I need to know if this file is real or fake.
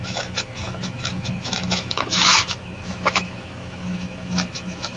fake